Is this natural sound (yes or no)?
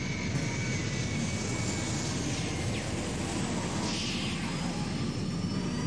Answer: yes